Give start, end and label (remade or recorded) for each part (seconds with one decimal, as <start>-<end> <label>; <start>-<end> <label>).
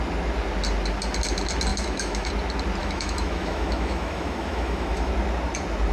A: 0.0-1.7 recorded; 1.7-2.3 remade; 2.3-2.8 recorded; 2.8-5.1 remade; 5.1-5.9 recorded